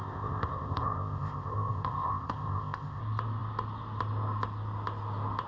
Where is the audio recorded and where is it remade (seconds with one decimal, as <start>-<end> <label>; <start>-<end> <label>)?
0.0-3.0 remade; 3.0-5.5 recorded